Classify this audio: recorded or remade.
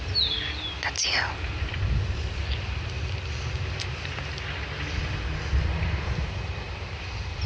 recorded